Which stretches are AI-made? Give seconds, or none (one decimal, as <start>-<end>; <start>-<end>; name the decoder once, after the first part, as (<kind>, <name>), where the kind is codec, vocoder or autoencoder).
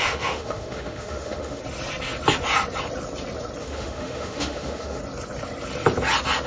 0.0-1.6 (autoencoder, DAC-VAE); 3.6-5.0